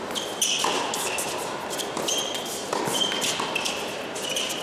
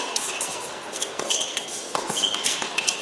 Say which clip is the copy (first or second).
second